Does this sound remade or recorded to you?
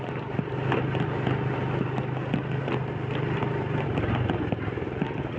recorded